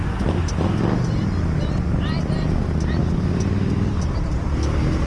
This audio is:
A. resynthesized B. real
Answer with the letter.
B